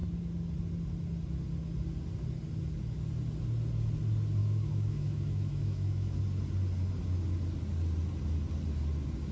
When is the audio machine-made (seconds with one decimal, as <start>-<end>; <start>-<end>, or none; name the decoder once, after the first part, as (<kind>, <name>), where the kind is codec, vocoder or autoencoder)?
4.4-6.2 (autoencoder, DAC-VAE)